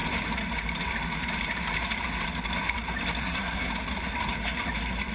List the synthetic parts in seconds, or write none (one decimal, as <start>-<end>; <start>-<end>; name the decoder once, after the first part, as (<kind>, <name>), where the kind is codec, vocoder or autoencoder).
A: 3.2-3.7 (codec, SNAC)